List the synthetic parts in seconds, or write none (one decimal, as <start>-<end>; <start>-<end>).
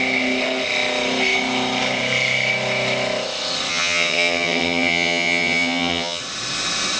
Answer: 3.7-6.2